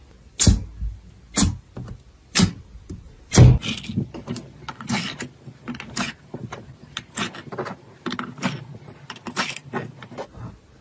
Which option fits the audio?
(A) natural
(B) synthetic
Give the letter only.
A